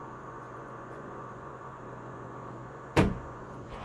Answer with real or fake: fake